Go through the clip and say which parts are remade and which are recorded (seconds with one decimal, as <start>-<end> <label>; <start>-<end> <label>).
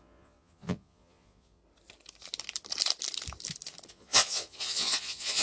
0.0-1.6 remade; 1.6-3.9 recorded; 3.9-5.4 remade